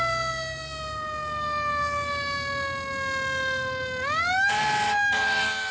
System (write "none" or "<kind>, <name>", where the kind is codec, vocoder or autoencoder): none